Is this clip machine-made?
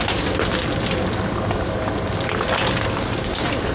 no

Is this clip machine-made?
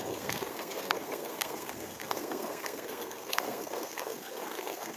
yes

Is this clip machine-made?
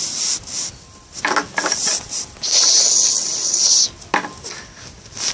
no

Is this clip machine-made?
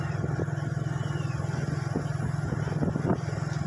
no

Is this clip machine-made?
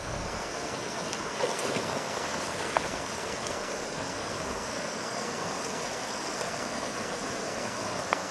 yes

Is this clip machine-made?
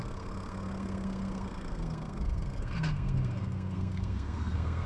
yes